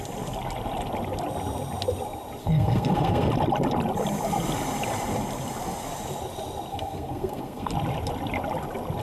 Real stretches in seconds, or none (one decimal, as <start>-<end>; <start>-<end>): 0.0-2.4; 3.3-6.7; 7.7-9.0